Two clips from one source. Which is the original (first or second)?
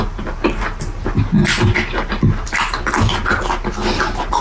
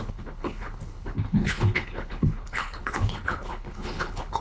first